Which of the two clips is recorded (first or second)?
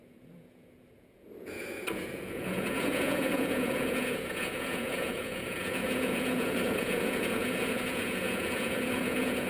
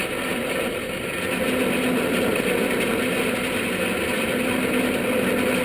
second